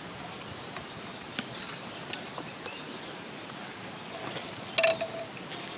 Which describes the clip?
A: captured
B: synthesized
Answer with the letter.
A